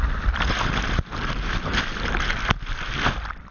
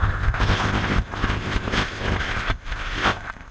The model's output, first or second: second